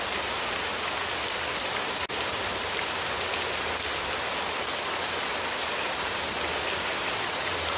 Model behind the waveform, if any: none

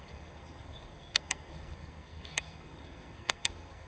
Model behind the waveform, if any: codec, SNAC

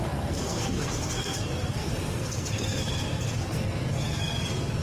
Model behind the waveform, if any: codec, SNAC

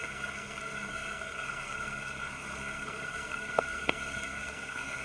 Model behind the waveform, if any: codec, SNAC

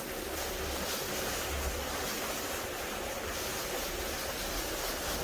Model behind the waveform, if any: none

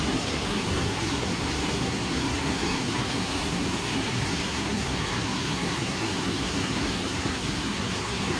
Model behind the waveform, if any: codec, SNAC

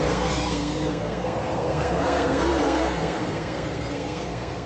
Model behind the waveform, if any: codec, SNAC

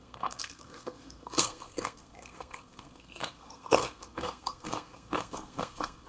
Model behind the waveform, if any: codec, SNAC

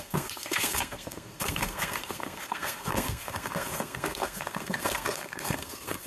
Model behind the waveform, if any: codec, SNAC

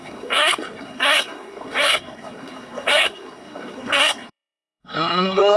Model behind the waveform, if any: codec, SNAC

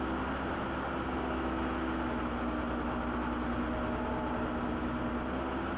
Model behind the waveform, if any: none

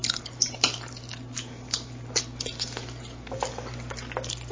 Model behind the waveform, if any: none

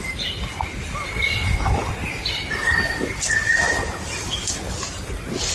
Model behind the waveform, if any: none